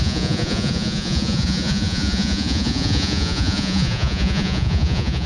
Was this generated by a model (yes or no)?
yes